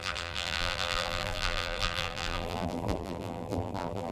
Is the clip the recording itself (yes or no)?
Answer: no